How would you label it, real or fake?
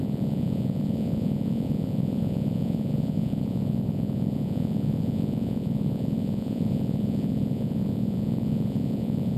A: fake